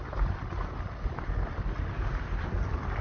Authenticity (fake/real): real